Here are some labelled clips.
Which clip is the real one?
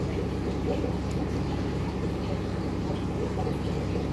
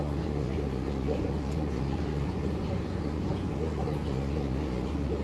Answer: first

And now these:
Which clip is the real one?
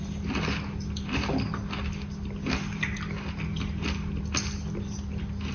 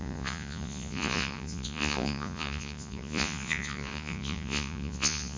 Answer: first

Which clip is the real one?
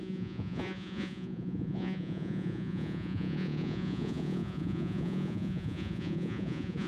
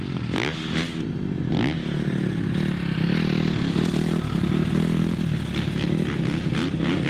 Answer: second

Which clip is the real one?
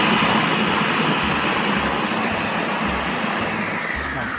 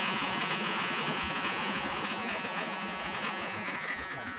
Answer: first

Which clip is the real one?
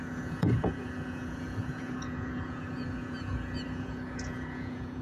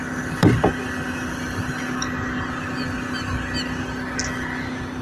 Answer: second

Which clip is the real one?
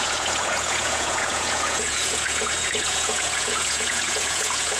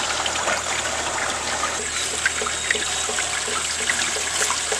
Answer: second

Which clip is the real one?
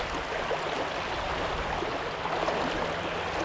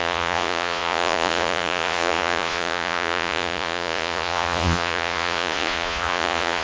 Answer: first